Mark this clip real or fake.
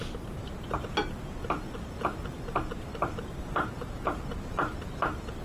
real